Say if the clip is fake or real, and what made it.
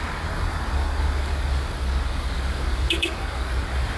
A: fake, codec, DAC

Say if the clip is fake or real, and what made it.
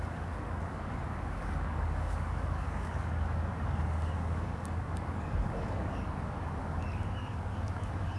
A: fake, codec, DAC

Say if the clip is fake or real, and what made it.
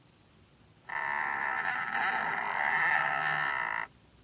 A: real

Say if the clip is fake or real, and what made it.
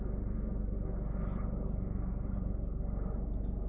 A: real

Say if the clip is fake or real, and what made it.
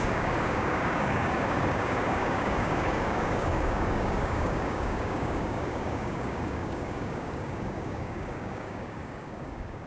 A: fake, codec, DAC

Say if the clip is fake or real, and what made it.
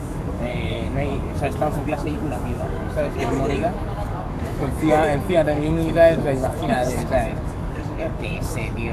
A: fake, codec, DAC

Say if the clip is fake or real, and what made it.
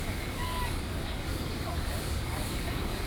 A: fake, codec, DAC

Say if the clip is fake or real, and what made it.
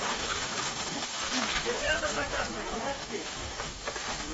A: fake, codec, DAC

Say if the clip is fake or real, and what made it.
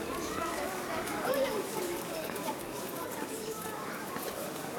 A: fake, codec, DAC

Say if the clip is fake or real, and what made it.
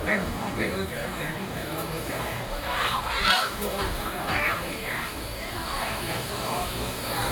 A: fake, codec, DAC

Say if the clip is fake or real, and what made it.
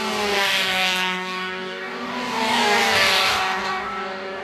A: fake, codec, DAC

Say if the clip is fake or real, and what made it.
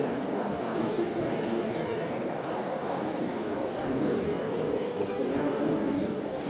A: fake, codec, DAC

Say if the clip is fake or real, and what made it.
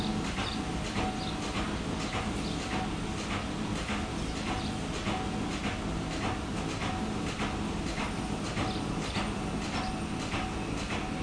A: real